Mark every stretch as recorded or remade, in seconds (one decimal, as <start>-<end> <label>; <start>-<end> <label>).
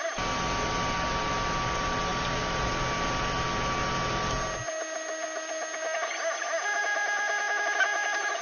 0.0-8.4 recorded